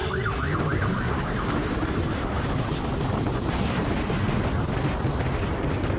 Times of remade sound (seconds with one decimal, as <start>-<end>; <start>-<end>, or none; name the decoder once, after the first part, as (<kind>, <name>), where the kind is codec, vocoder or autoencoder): none